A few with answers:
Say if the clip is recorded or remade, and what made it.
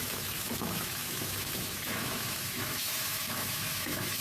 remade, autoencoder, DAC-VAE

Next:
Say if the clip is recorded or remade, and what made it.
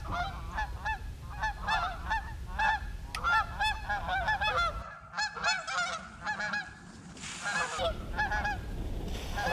recorded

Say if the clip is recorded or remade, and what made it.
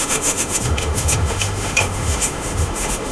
remade, autoencoder, DAC-VAE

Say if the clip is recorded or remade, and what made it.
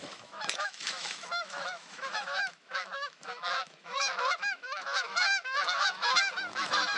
remade, autoencoder, DAC-VAE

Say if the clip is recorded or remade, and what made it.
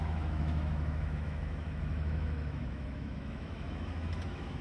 remade, autoencoder, DAC-VAE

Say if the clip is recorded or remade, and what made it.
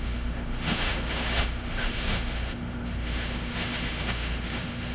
remade, autoencoder, DAC-VAE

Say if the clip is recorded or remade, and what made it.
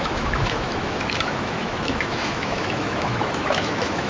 remade, autoencoder, DAC-VAE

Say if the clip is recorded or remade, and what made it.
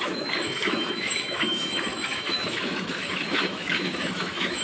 remade, autoencoder, DAC-VAE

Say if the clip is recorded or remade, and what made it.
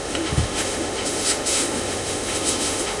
remade, autoencoder, DAC-VAE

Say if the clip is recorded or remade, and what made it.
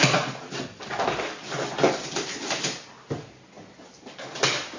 recorded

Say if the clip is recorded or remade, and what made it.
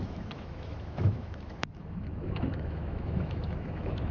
remade, autoencoder, DAC-VAE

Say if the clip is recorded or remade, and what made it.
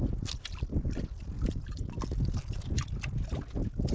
recorded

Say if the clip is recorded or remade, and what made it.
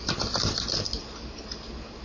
recorded